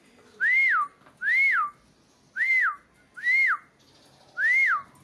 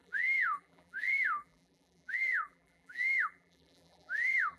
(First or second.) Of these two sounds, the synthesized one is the second